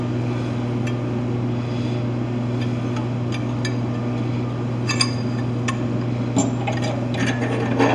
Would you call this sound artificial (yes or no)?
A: no